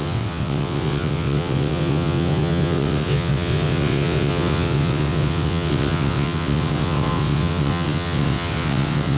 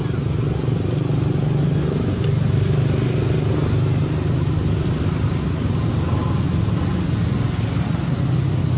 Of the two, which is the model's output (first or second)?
first